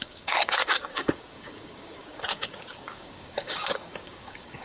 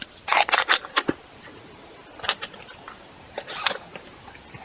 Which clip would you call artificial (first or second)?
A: first